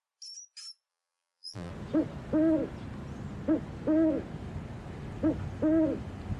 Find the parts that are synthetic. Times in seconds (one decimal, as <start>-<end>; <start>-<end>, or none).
0.9-1.7

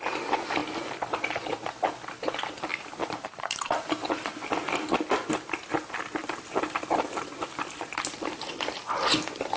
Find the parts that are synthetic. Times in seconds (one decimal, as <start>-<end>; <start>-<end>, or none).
2.7-3.8; 6.2-8.4